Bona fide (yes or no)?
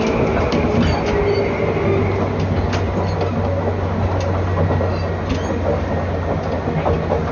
yes